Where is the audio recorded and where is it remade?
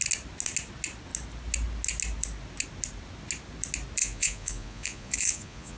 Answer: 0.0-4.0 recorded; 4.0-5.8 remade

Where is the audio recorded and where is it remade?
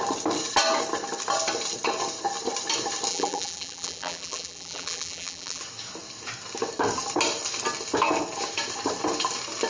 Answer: 0.0-3.1 recorded; 3.1-5.6 remade; 5.6-9.7 recorded